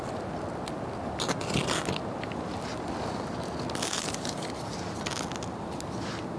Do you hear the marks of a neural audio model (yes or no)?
no